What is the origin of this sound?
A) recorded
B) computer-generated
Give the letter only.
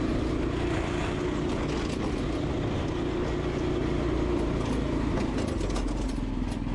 A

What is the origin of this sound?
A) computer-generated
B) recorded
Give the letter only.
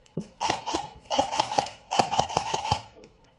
A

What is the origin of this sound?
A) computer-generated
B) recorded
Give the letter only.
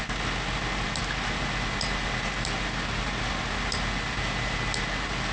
B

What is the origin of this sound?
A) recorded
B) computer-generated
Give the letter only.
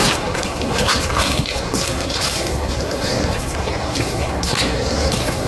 B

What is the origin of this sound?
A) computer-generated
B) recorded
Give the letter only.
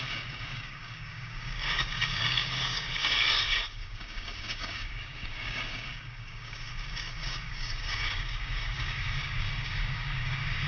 A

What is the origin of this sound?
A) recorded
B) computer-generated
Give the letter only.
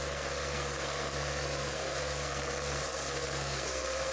B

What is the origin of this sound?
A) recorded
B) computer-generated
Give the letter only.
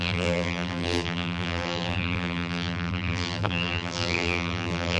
B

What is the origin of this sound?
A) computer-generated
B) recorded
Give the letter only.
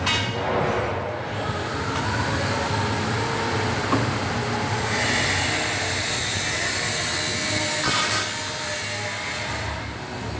B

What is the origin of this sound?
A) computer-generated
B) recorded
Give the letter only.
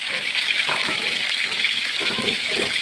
A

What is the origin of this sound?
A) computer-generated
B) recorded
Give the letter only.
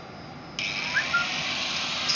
B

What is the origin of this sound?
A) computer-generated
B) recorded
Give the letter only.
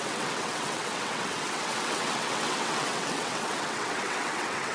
A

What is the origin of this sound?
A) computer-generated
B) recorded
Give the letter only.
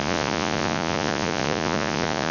A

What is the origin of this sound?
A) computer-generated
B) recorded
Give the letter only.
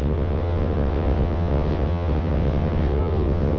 A